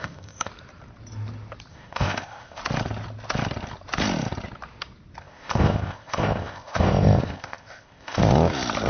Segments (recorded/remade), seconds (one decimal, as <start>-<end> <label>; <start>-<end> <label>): 0.0-0.5 remade; 0.5-1.7 recorded; 1.7-2.6 remade; 2.6-5.2 recorded; 5.2-8.2 remade; 8.2-8.9 recorded